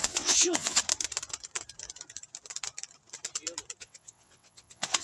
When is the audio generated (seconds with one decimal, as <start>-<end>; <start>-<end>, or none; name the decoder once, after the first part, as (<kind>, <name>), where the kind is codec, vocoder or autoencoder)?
0.0-0.8 (vocoder, WaveNeXt); 3.8-5.0